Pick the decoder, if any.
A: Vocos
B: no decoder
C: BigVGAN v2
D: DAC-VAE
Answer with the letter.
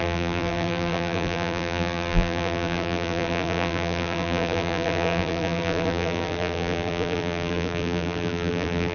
C